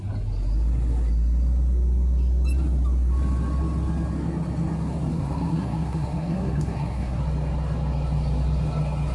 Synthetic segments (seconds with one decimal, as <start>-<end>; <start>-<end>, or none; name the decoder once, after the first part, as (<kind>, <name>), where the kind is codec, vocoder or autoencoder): 5.1-7.2 (codec, SNAC)